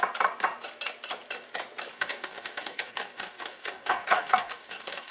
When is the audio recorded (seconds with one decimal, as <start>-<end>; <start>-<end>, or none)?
0.0-1.9